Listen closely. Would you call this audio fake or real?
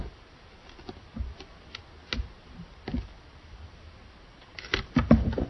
real